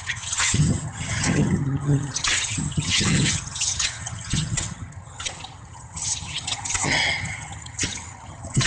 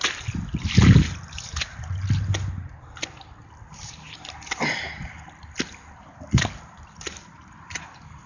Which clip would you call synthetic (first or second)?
first